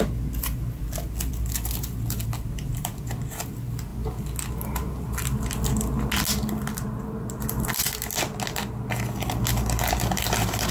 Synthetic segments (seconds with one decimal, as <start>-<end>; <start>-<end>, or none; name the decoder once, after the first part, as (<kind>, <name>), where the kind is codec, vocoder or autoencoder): none